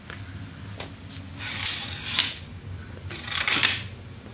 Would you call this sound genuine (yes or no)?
yes